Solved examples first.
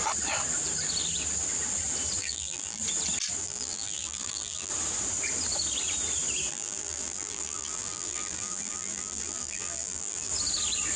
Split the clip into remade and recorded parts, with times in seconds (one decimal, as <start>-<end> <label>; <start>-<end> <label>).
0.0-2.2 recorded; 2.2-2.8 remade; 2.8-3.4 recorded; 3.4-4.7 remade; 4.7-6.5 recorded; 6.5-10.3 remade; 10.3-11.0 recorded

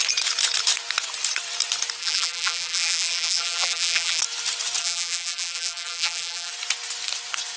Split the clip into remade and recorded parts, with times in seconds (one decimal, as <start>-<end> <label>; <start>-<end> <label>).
0.0-2.0 recorded; 2.0-4.2 remade; 4.2-4.8 recorded; 4.8-6.5 remade; 6.5-7.6 recorded

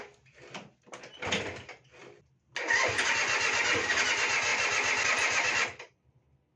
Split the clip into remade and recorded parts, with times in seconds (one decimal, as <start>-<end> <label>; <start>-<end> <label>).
0.0-6.6 recorded